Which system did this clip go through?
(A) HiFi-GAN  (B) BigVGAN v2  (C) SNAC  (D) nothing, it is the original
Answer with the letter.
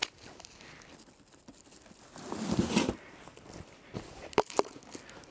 D